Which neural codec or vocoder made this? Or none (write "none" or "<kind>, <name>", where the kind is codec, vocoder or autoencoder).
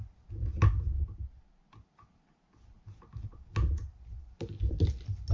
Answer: none